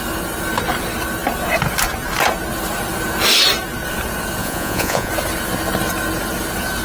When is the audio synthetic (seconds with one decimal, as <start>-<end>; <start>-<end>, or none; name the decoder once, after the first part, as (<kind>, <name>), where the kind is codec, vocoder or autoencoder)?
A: 4.4-5.1 (vocoder, Vocos)